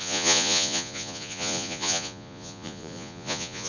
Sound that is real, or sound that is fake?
fake